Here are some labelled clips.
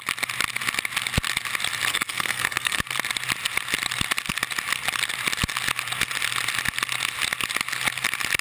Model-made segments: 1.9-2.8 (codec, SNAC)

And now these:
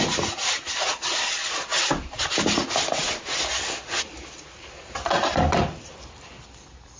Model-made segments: none

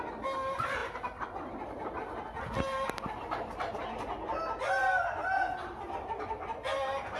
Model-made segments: 0.8-2.1 (vocoder, BigVGAN v2)

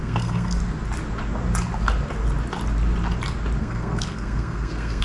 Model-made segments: 0.0-0.6 (codec, SNAC); 3.6-5.0